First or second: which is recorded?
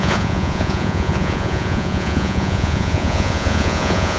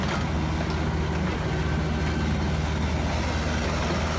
second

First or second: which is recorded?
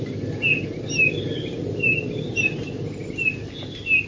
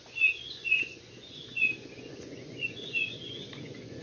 first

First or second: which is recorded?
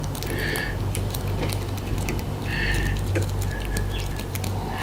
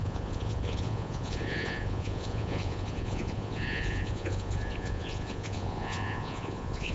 first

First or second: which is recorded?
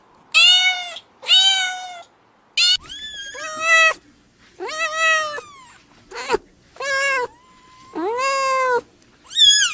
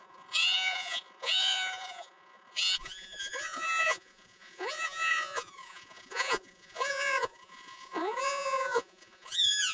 first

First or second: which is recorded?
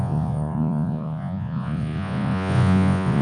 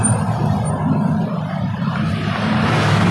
second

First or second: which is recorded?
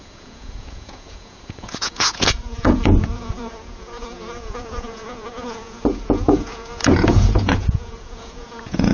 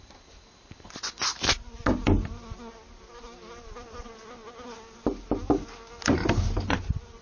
second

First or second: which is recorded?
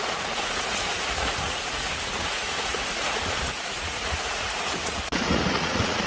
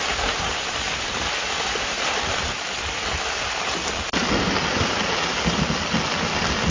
second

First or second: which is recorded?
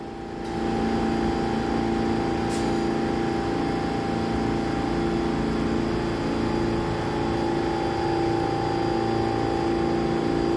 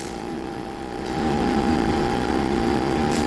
first